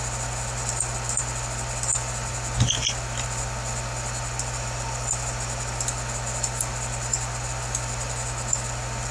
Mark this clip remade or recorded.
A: recorded